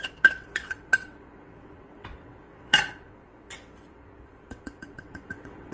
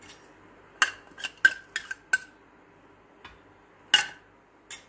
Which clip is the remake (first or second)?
first